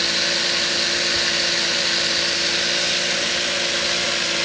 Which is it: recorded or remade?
recorded